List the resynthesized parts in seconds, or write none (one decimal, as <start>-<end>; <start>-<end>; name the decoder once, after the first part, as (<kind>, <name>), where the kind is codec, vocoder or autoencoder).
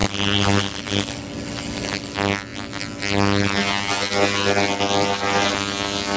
none